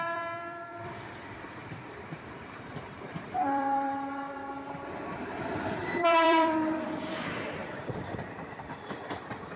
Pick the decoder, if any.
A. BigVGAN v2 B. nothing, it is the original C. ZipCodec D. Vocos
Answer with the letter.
A